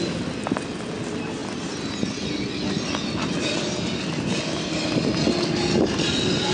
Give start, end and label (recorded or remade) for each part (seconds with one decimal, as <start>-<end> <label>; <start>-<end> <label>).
0.0-6.5 recorded